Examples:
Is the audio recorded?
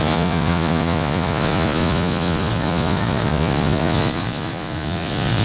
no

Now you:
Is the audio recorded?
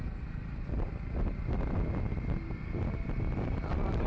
yes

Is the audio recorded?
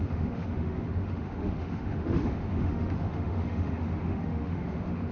no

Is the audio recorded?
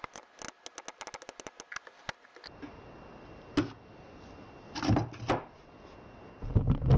yes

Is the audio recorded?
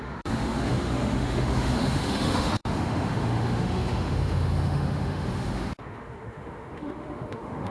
no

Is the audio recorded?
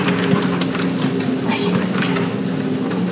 yes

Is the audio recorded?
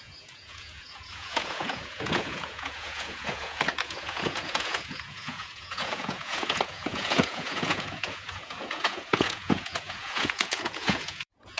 no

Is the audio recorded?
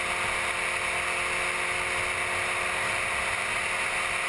yes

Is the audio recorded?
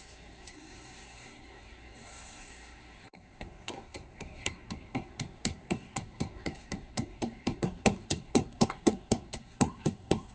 no